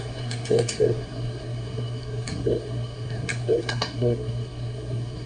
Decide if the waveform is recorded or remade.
remade